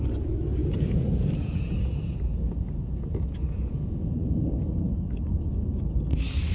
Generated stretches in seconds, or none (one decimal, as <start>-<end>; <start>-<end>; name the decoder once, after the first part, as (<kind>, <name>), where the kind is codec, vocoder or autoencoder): 0.6-4.5 (vocoder, Vocos)

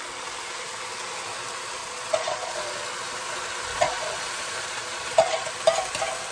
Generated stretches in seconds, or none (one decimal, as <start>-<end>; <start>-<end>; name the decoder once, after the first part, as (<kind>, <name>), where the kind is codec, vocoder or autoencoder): 1.8-2.7 (vocoder, Vocos); 3.7-5.5

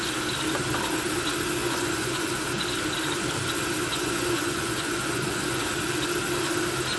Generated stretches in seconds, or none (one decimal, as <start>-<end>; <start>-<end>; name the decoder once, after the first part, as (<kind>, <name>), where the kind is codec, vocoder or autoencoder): 1.6-2.3 (vocoder, Vocos); 3.9-5.6

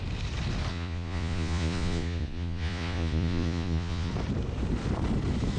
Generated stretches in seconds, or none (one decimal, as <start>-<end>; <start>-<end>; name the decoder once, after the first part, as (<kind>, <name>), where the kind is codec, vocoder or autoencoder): 0.7-4.1 (vocoder, Vocos)

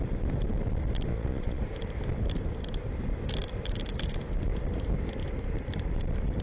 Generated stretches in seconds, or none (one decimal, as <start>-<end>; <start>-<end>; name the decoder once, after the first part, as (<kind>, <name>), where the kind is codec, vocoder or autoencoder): 1.1-1.6 (vocoder, Vocos)